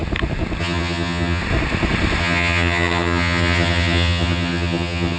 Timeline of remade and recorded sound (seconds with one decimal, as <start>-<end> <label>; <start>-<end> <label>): 0.0-0.6 recorded; 0.6-1.4 remade; 1.4-2.2 recorded; 2.2-5.2 remade